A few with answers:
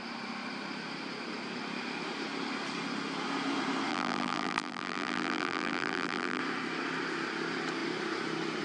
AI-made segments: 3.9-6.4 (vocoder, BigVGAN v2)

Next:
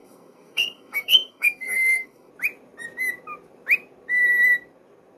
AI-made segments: 0.0-2.3 (codec, SNAC)

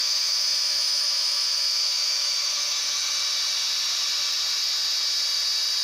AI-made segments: 0.0-3.1 (autoencoder, DAC-VAE)

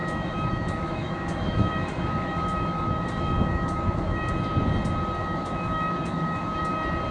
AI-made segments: 0.0-4.3 (autoencoder, DAC-VAE); 5.2-6.6

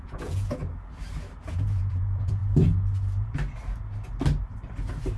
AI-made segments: 0.0-0.6 (vocoder, Vocos); 1.5-2.4

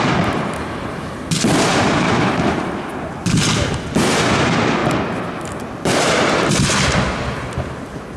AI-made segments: none

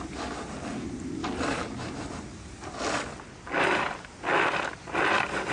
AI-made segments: none